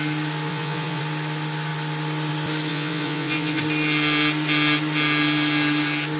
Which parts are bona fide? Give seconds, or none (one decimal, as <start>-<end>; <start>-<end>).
0.0-0.5; 1.0-2.7; 3.6-6.2